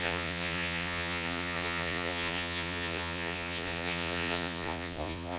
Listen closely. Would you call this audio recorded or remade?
remade